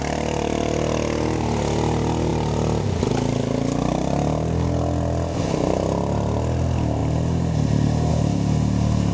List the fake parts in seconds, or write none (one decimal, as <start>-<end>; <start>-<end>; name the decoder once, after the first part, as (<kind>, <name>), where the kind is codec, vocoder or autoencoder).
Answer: none